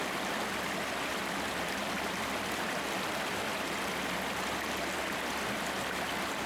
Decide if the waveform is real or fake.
real